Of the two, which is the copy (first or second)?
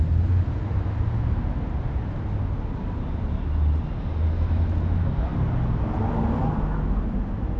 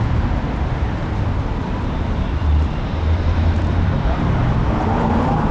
second